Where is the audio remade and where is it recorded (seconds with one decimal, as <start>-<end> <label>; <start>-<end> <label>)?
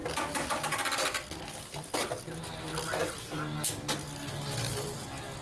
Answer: 0.0-5.4 recorded